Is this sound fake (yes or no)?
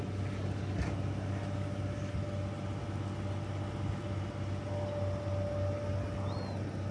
no